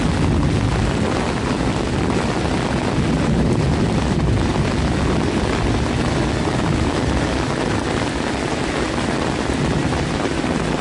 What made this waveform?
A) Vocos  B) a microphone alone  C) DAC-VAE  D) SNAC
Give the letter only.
B